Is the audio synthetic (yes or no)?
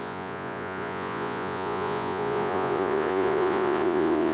yes